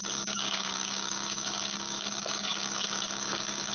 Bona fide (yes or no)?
no